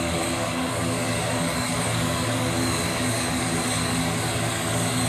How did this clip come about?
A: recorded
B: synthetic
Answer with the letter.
B